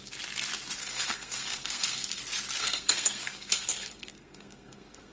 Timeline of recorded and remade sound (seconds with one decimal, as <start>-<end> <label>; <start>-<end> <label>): 0.0-0.8 recorded; 0.8-2.2 remade; 2.2-2.6 recorded; 2.6-5.1 remade